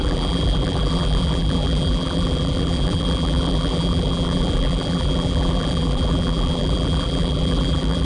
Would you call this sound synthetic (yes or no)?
yes